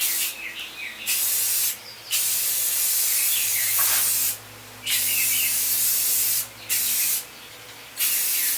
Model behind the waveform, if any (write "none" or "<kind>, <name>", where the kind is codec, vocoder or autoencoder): none